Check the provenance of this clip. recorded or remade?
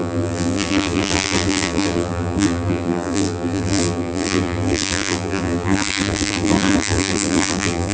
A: remade